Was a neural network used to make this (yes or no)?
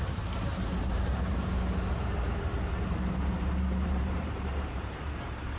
yes